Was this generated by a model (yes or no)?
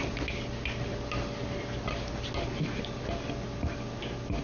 no